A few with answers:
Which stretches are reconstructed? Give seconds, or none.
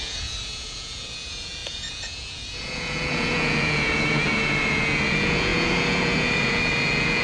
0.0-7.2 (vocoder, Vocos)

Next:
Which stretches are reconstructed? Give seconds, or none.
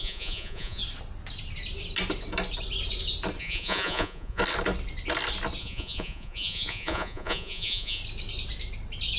0.0-0.8 (vocoder, Vocos); 3.4-4.4; 5.6-8.0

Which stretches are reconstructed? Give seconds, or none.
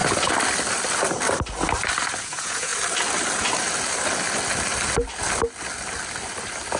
2.2-2.7 (vocoder, Vocos)